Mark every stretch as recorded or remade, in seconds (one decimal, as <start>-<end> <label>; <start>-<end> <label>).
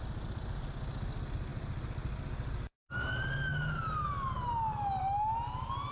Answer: 0.0-5.9 recorded